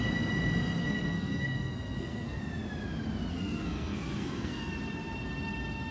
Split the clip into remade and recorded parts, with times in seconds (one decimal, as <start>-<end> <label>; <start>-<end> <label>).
0.0-0.8 recorded; 0.8-2.4 remade; 2.4-3.3 recorded; 3.3-4.7 remade; 4.7-5.9 recorded